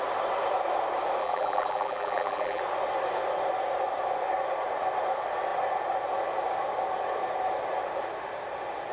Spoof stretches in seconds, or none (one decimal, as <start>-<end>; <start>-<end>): 1.2-2.6